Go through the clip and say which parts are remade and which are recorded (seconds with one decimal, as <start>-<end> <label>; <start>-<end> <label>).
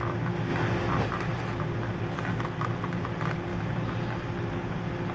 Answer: 0.0-5.1 recorded